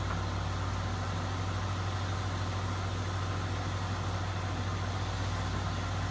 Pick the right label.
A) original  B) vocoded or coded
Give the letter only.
A